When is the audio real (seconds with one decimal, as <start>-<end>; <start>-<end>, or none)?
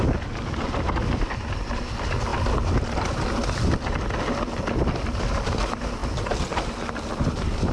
0.0-7.7